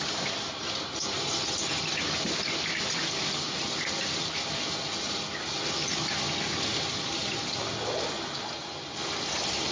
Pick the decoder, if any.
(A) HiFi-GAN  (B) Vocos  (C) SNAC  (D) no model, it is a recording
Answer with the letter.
D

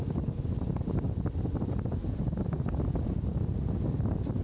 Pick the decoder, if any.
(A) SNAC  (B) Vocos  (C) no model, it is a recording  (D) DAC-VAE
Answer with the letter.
C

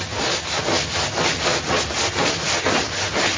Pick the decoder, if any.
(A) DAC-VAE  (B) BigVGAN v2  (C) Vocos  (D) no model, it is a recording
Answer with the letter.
D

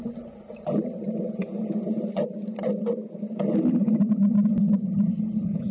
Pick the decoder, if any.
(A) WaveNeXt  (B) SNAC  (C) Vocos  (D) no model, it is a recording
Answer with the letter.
D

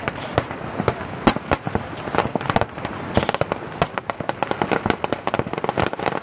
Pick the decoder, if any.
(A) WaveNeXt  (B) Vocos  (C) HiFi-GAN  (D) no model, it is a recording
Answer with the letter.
D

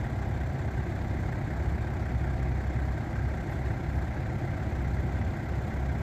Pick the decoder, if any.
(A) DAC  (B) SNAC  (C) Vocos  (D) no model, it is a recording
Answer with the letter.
D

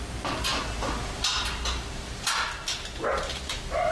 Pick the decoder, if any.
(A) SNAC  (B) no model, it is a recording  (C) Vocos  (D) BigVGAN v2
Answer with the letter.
B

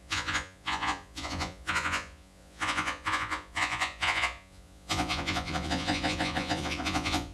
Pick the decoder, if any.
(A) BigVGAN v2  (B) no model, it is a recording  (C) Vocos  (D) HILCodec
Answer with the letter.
C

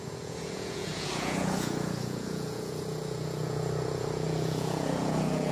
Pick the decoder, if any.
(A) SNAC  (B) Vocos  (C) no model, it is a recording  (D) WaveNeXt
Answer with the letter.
B